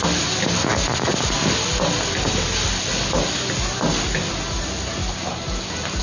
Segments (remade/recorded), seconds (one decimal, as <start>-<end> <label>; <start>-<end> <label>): 0.0-1.1 recorded; 1.1-2.2 remade; 2.2-6.0 recorded